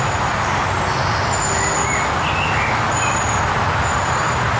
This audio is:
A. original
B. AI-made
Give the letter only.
A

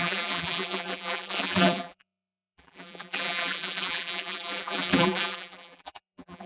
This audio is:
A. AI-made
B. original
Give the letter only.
A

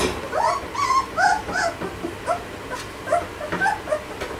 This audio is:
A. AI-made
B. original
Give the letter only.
B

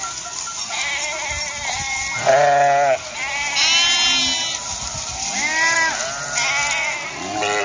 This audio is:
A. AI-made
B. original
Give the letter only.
B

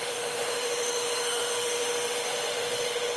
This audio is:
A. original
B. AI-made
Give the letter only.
B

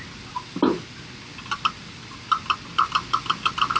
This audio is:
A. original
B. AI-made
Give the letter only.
A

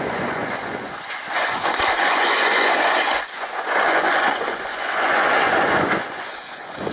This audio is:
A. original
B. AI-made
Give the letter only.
B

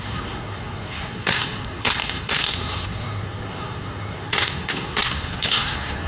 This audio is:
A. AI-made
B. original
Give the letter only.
A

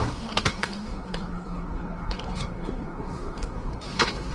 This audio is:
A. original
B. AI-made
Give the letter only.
B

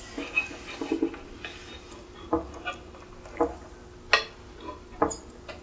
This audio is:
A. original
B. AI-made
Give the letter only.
A